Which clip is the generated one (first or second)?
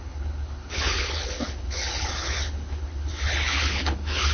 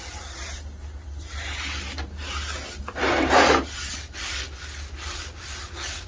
first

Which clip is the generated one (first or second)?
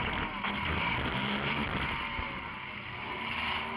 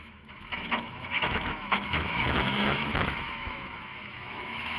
second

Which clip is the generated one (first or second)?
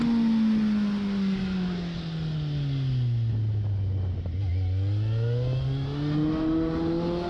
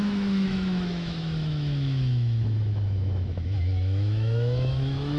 second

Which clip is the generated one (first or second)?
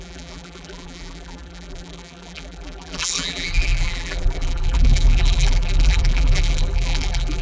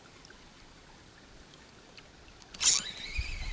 first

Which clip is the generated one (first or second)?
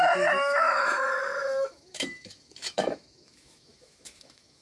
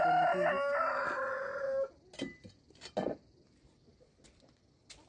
first